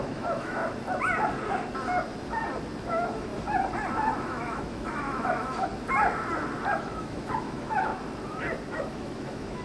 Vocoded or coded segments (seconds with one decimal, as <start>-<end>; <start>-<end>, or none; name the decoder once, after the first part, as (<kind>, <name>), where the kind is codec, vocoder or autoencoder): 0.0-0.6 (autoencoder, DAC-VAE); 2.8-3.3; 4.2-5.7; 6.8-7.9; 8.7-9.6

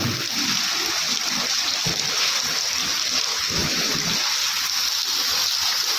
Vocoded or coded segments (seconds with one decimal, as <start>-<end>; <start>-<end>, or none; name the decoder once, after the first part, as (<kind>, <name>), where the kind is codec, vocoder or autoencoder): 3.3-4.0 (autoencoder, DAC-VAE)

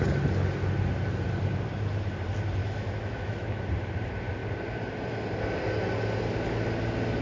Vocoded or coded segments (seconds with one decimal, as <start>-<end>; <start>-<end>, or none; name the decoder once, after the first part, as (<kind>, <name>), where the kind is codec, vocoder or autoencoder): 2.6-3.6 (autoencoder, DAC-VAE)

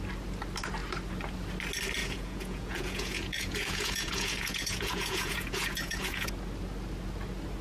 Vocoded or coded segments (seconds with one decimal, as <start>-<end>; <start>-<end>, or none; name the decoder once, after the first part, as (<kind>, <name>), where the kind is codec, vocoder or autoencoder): 2.0-6.3 (vocoder, Vocos)